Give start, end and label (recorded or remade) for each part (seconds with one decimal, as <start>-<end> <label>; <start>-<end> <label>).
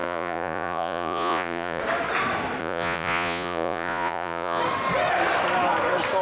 0.0-1.8 remade; 1.8-2.6 recorded; 2.6-4.6 remade; 4.6-6.2 recorded